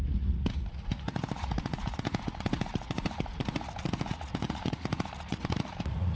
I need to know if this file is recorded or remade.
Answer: remade